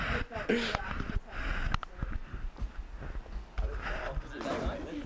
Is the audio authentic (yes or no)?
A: yes